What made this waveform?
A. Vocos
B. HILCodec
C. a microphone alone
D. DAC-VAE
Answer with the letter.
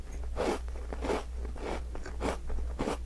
C